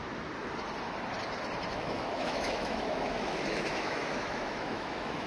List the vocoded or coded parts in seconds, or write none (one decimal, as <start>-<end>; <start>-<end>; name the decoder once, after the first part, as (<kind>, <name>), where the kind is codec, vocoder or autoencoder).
1.7-5.3 (autoencoder, DAC-VAE)